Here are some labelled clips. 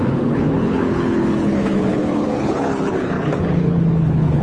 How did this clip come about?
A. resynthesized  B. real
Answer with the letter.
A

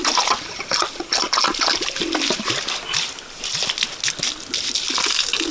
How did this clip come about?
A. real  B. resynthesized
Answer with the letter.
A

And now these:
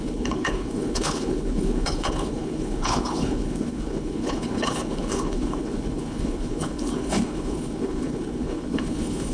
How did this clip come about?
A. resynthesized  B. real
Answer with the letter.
A